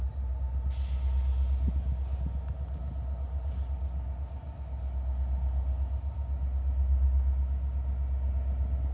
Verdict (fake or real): real